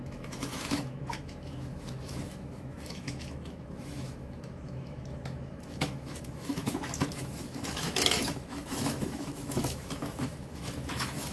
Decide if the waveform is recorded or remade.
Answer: remade